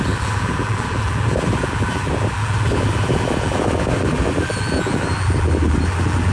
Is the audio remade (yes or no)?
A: yes